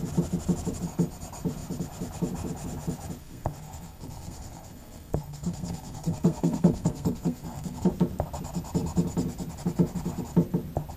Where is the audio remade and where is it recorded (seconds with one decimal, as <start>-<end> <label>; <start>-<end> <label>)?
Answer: 0.0-3.2 recorded; 3.2-7.9 remade; 7.9-11.0 recorded